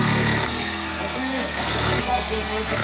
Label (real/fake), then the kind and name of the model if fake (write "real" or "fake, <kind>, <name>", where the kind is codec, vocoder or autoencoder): fake, codec, SNAC